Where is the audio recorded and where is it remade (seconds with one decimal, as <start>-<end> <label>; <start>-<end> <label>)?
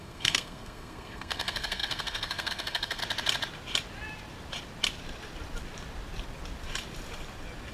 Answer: 0.0-3.0 remade; 3.0-7.7 recorded